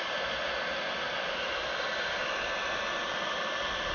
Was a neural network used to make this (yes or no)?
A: no